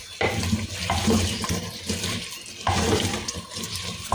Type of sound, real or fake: real